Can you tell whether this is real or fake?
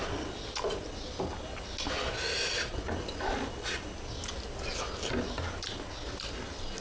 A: real